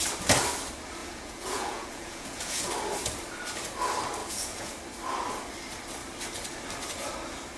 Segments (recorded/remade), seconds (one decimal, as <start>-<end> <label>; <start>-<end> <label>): 0.0-1.0 recorded; 1.0-2.7 remade; 2.7-4.2 recorded; 4.2-4.7 remade; 4.7-7.6 recorded

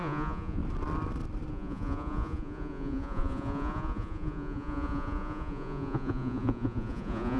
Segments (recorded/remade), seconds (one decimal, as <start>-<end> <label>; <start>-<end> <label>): 0.0-0.6 remade; 0.6-1.5 recorded; 1.5-7.4 remade

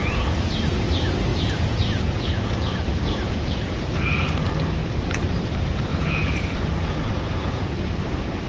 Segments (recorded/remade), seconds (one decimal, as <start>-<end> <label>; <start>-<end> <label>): 0.0-0.6 remade; 0.6-1.3 recorded; 1.3-4.2 remade; 4.2-5.9 recorded; 5.9-7.8 remade; 7.8-8.5 recorded

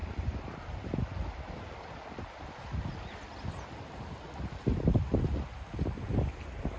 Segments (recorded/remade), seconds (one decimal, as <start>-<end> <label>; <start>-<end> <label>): 0.0-6.8 recorded

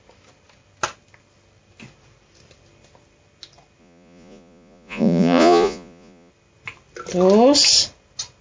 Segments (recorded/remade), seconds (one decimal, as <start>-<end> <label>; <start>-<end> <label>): 0.0-3.8 recorded; 3.8-6.3 remade; 6.3-8.4 recorded

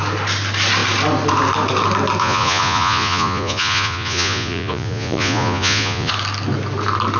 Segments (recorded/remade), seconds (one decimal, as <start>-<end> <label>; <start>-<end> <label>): 0.0-2.2 recorded; 2.2-6.1 remade; 6.1-7.2 recorded